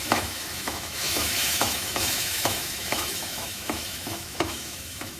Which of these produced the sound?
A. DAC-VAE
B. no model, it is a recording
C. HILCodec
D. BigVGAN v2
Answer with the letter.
A